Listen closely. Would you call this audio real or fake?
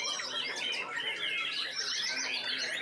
real